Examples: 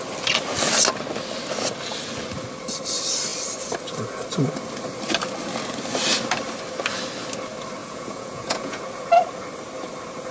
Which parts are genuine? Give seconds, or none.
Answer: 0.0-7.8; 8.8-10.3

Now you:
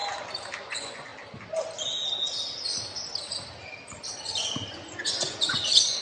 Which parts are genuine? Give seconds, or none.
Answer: 0.0-0.6; 1.1-4.7

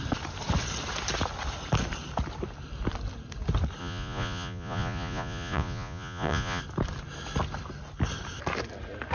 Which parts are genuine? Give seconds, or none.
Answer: 0.0-3.8; 6.6-9.1

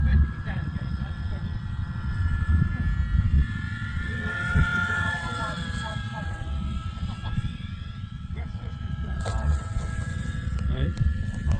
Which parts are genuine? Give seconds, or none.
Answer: 2.7-3.2

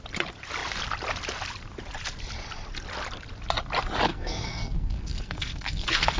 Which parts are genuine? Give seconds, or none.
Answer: 0.0-4.1